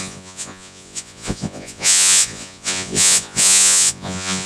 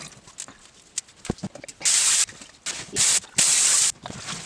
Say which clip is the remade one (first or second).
first